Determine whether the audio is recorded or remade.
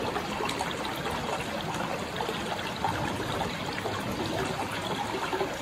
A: recorded